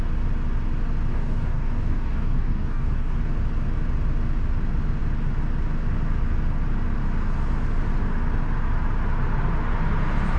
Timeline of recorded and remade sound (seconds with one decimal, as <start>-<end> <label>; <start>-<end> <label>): 0.0-1.1 recorded; 1.1-3.2 remade; 3.2-10.4 recorded